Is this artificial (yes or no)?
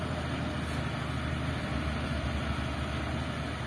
no